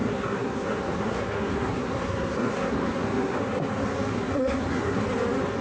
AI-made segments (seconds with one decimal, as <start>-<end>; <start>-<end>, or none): 0.0-3.4; 4.1-5.0